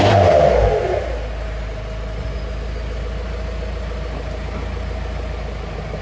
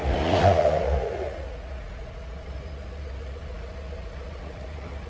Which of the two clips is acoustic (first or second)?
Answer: first